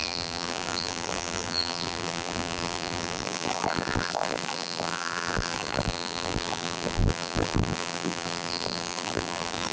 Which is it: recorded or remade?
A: remade